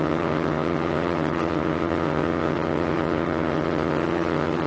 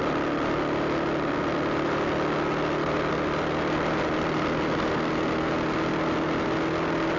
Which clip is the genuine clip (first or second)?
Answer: second